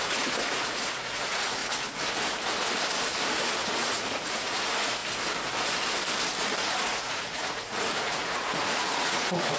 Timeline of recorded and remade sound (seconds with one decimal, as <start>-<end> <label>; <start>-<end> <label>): 0.0-1.6 remade; 1.6-3.7 recorded; 3.7-5.0 remade; 5.0-6.6 recorded; 6.6-9.6 remade